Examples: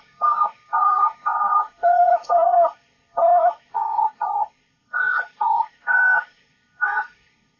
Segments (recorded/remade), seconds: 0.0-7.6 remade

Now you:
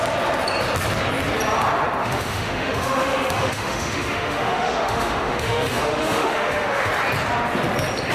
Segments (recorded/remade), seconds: 0.0-2.0 recorded; 2.0-6.9 remade; 6.9-8.1 recorded

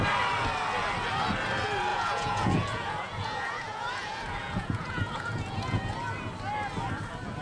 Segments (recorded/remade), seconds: 0.0-1.9 recorded; 1.9-5.8 remade; 5.8-7.4 recorded

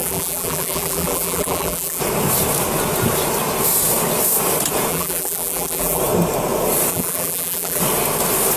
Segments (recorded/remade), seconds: 0.0-2.0 remade; 2.0-4.9 recorded; 4.9-6.0 remade; 6.0-6.9 recorded; 6.9-7.8 remade; 7.8-8.6 recorded